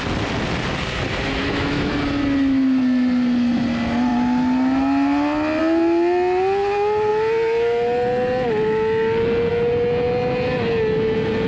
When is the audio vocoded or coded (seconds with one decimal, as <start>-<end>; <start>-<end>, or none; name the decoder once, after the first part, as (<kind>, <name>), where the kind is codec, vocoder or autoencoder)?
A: 1.4-1.9 (autoencoder, DAC-VAE)